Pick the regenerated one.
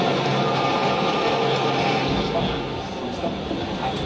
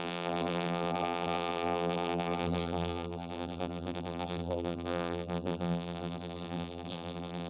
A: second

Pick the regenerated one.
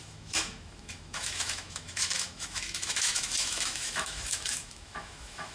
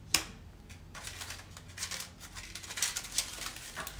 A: first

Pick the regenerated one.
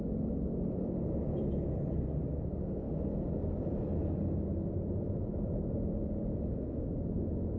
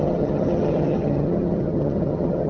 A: second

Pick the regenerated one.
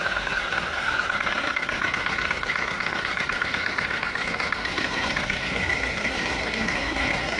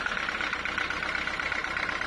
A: first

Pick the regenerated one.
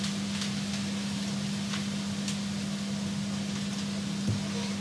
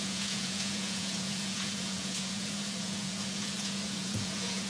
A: second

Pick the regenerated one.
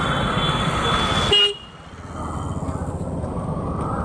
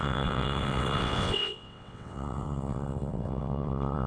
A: second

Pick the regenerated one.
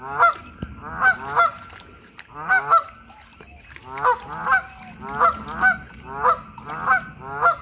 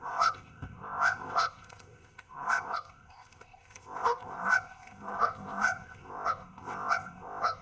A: second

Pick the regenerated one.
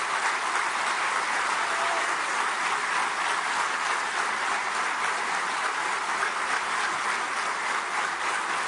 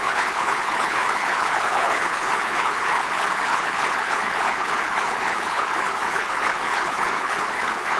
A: second